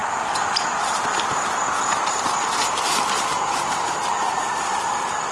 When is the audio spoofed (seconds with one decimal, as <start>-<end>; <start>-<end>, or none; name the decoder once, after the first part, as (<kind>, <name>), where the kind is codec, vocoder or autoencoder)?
1.9-4.4 (vocoder, BigVGAN v2)